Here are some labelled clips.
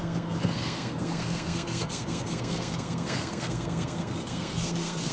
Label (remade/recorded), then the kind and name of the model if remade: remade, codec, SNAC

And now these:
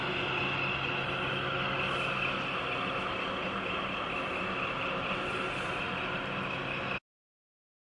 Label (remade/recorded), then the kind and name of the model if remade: recorded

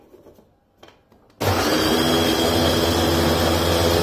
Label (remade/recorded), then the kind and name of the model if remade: recorded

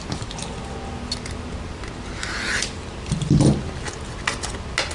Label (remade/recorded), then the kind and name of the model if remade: recorded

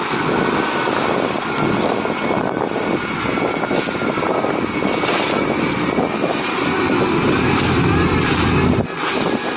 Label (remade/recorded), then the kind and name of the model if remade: recorded